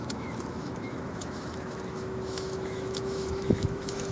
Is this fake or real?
fake